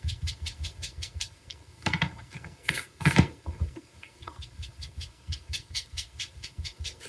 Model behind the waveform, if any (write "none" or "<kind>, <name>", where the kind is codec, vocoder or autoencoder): codec, SNAC